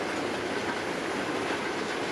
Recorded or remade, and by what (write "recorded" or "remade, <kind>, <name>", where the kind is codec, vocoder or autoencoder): recorded